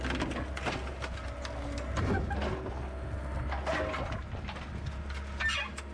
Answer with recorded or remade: recorded